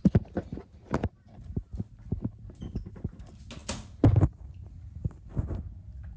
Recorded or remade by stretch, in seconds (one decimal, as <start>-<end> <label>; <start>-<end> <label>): 0.0-6.2 recorded